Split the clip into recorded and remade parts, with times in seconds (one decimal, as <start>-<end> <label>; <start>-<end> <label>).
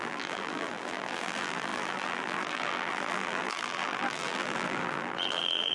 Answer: 0.0-5.7 remade